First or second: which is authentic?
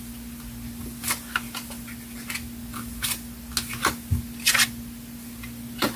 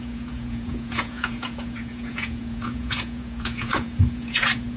first